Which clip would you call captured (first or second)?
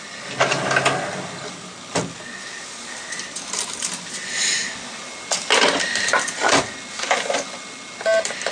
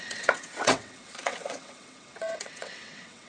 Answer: first